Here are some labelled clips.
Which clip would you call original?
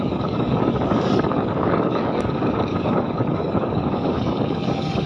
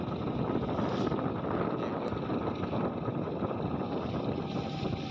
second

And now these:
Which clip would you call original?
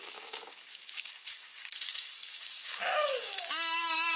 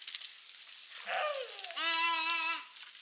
second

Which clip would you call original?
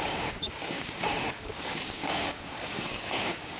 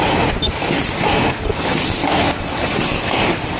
second